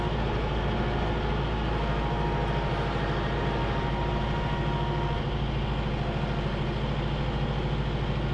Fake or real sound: real